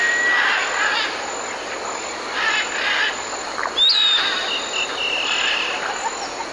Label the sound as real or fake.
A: real